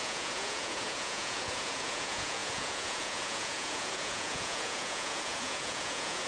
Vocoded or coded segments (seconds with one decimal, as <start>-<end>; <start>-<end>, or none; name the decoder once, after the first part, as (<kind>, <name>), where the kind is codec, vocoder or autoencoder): 0.0-6.3 (vocoder, Vocos)